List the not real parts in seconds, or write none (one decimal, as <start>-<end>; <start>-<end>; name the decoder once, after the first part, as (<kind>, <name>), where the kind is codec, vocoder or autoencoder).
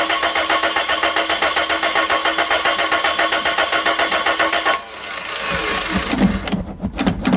none